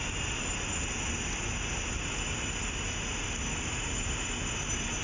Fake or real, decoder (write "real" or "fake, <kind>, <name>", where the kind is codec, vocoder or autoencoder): real